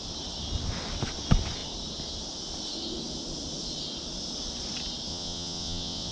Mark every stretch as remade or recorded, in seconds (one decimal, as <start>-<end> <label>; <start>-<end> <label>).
0.0-5.1 recorded; 5.1-6.1 remade